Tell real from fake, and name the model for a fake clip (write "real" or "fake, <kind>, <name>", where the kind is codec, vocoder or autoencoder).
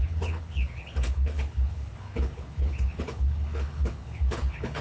fake, codec, HILCodec